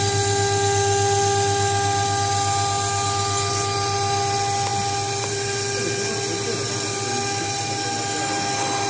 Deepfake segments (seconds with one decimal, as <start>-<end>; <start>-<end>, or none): none